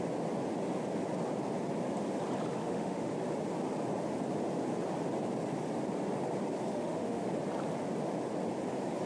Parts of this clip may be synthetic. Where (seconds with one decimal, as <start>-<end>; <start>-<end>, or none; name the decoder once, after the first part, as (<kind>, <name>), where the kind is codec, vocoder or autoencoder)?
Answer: 2.6-3.1 (autoencoder, DAC-VAE); 6.7-7.3